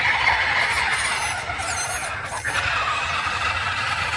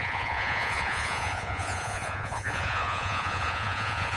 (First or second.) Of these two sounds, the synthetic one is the second